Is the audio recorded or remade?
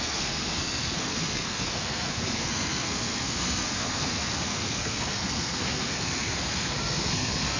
remade